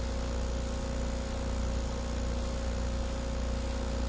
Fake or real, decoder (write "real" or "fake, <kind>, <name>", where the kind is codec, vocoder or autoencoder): real